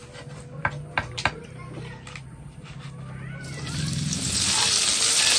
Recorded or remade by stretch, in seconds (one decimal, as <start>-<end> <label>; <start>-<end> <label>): 0.0-5.4 recorded